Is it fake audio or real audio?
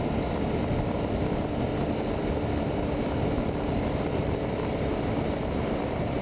real